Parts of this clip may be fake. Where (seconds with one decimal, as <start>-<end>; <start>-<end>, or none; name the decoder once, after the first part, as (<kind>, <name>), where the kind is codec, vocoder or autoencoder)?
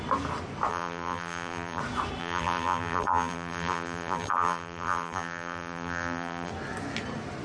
0.7-1.8 (vocoder, BigVGAN v2); 2.2-6.5